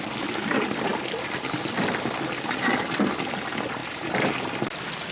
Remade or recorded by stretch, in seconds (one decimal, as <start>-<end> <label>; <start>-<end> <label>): 0.0-5.1 recorded